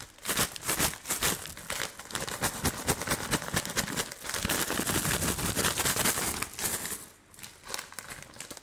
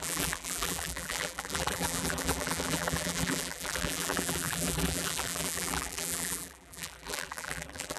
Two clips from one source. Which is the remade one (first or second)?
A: second